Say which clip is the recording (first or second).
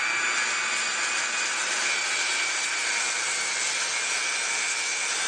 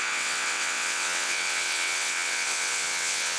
first